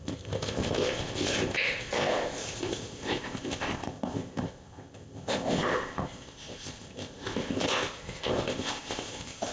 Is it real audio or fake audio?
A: fake